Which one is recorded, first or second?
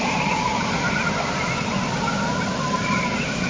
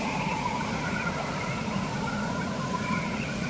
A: first